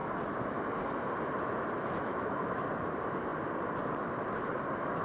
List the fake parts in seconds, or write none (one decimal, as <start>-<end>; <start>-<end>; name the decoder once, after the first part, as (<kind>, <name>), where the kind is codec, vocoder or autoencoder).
2.1-2.6 (autoencoder, DAC-VAE)